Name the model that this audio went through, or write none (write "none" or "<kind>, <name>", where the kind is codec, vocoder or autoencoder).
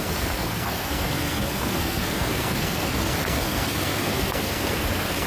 codec, SNAC